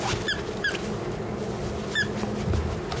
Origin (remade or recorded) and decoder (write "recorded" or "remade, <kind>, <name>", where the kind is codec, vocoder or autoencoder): recorded